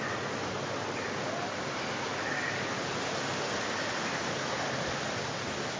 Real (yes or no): yes